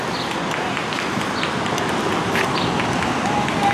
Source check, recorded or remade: recorded